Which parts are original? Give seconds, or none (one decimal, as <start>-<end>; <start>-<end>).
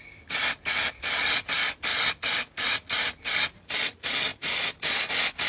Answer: 0.0-5.5